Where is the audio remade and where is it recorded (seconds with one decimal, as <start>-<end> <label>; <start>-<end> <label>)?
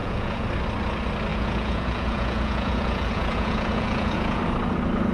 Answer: 0.0-0.5 remade; 0.5-1.3 recorded; 1.3-4.4 remade; 4.4-5.1 recorded